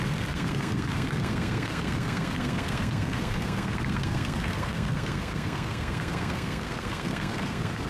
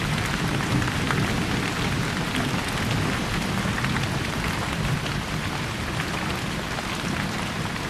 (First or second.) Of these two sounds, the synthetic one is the first